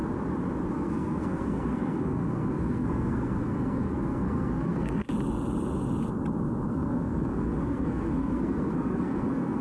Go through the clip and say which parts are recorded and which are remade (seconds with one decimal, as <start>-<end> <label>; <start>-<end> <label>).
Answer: 0.0-0.7 recorded; 0.7-5.0 remade; 5.0-6.7 recorded; 6.7-9.6 remade